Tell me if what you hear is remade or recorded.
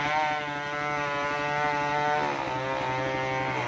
recorded